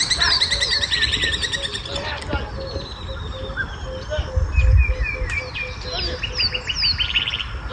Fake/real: real